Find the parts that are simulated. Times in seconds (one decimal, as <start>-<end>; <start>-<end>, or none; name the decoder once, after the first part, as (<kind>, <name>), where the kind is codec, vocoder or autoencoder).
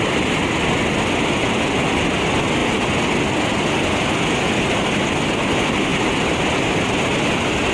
none